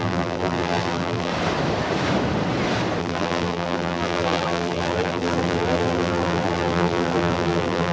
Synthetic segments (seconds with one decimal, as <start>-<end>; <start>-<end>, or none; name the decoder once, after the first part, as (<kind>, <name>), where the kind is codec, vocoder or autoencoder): 0.0-1.3 (vocoder, BigVGAN v2); 3.0-7.9